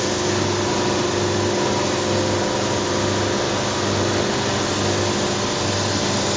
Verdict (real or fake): real